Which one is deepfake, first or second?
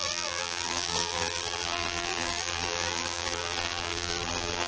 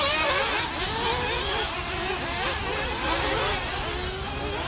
first